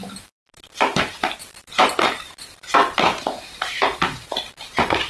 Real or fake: fake